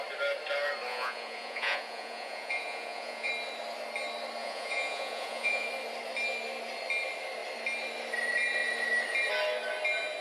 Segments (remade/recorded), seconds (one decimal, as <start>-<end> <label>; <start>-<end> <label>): 0.0-0.9 recorded; 0.9-3.3 remade; 3.3-4.4 recorded; 4.4-5.7 remade; 5.7-10.2 recorded